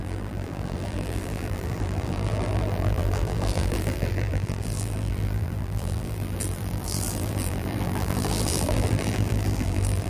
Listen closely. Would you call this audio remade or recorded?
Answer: remade